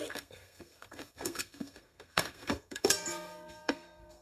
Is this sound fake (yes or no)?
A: yes